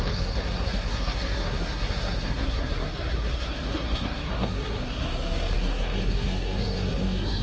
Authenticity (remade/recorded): remade